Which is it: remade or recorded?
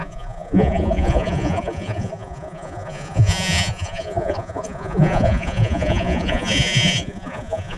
remade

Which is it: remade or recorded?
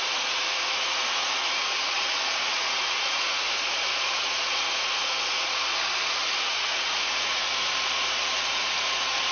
remade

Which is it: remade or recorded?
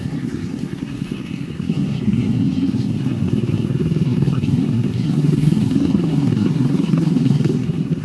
remade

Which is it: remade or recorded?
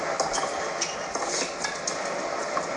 recorded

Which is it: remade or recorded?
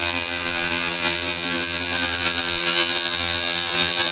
remade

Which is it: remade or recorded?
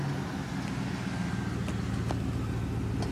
recorded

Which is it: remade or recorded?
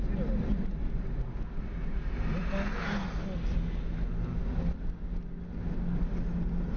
recorded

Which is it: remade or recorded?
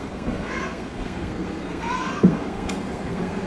remade